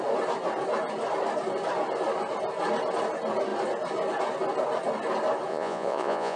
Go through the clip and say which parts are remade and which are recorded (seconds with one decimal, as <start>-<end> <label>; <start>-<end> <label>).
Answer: 0.0-5.5 recorded; 5.5-6.4 remade